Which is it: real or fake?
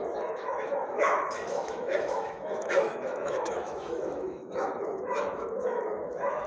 fake